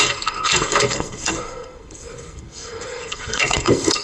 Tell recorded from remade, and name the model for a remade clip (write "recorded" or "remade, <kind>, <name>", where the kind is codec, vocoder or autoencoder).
remade, codec, SNAC